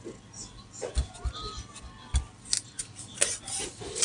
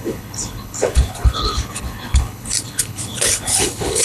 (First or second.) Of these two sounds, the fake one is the second